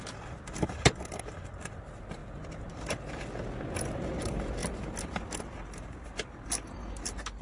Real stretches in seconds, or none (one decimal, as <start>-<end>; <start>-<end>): 0.0-7.4